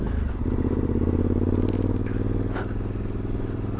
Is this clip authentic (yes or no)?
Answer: yes